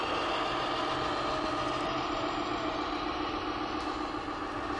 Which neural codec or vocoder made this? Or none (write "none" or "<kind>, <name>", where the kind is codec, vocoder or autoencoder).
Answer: none